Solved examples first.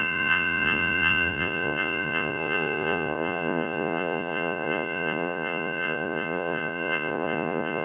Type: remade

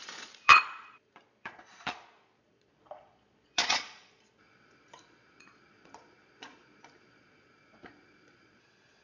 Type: remade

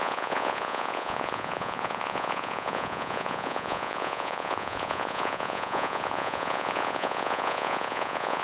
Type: remade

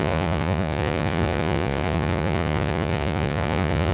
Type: remade